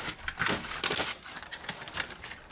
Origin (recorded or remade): recorded